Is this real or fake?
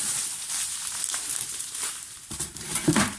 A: fake